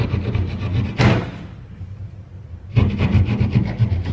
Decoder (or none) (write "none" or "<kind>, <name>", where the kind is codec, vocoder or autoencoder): none